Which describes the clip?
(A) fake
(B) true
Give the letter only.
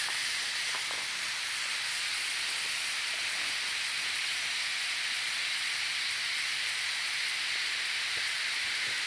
B